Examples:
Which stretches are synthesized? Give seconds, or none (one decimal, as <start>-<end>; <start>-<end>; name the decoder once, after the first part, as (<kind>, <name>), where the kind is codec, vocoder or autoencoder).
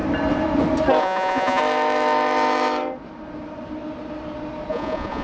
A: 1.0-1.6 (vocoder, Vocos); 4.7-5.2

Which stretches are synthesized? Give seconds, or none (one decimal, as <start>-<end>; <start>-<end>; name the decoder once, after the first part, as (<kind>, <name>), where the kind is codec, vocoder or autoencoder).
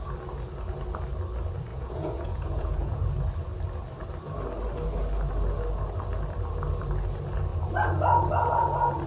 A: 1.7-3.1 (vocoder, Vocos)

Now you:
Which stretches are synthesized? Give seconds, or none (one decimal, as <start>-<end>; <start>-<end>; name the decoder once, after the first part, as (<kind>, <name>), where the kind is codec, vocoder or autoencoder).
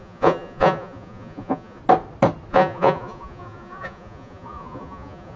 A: 0.0-1.8 (vocoder, Vocos); 2.5-5.4